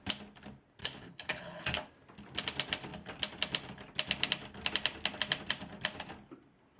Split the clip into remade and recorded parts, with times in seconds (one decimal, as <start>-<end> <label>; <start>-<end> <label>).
0.0-0.8 recorded; 0.8-1.6 remade; 1.6-6.8 recorded